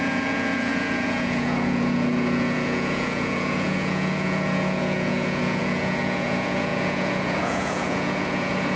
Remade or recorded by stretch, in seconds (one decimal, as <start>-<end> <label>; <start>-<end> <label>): 0.0-8.8 remade